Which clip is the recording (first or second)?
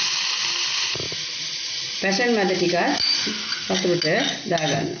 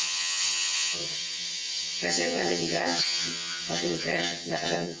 first